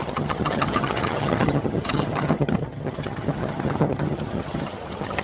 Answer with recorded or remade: remade